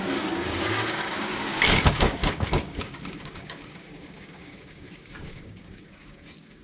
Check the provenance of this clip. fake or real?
fake